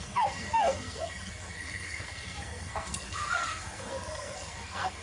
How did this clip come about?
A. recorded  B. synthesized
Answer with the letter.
B